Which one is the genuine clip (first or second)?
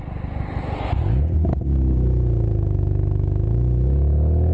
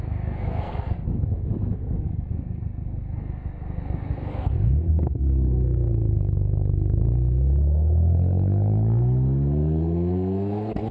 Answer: first